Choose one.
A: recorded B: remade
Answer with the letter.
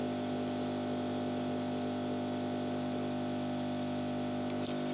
A